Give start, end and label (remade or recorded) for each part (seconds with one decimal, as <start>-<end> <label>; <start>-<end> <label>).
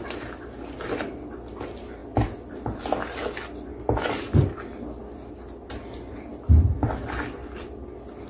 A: 0.0-8.3 recorded